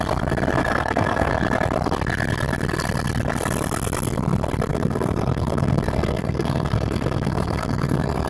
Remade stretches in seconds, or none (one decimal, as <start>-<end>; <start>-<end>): 0.6-1.3; 4.7-8.3